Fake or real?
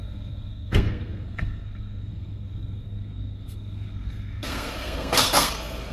fake